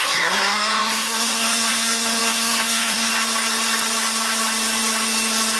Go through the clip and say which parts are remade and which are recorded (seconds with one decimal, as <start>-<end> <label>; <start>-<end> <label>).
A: 0.0-3.1 remade; 3.1-5.6 recorded